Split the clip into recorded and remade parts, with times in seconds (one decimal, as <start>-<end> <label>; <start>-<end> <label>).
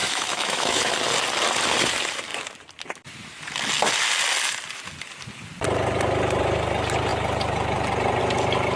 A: 0.0-0.9 remade; 0.9-8.8 recorded